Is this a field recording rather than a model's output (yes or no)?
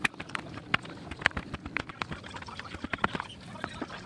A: yes